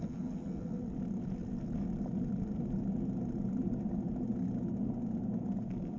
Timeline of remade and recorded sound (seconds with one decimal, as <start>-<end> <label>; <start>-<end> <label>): 0.0-6.0 recorded